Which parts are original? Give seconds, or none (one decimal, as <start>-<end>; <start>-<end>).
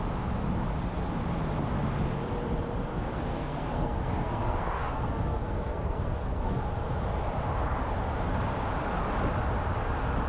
0.0-2.9; 6.6-10.3